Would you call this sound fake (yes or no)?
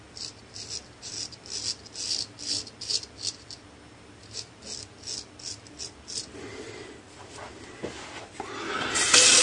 no